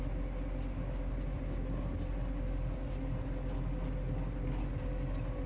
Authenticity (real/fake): real